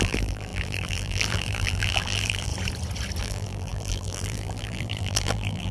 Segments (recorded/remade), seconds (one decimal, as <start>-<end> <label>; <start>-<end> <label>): 0.0-2.5 remade; 2.5-3.2 recorded; 3.2-5.7 remade